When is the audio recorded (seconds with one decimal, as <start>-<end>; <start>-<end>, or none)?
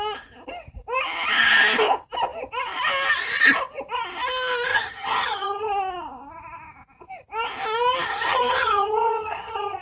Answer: 0.0-4.7; 5.7-8.1